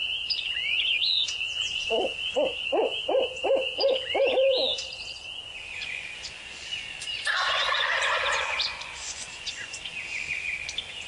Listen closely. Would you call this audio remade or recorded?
remade